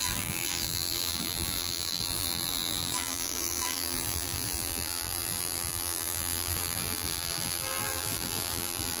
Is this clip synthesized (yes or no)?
yes